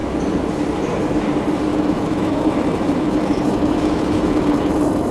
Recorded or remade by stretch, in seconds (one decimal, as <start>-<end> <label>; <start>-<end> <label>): 0.0-1.7 recorded; 1.7-5.1 remade